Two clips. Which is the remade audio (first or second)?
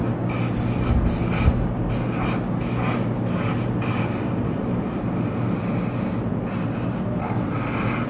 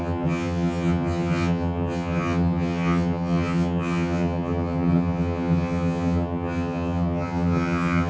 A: second